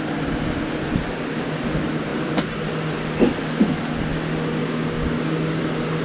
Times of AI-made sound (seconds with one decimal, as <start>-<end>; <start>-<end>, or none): 4.6-5.6